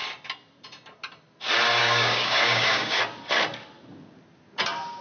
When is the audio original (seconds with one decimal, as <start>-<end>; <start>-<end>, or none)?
0.0-1.8; 3.0-5.0